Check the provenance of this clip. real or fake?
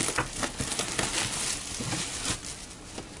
real